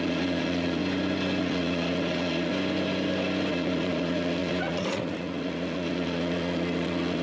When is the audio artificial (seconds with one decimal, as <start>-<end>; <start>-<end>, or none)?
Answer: 0.0-0.8; 1.4-2.5; 3.5-7.2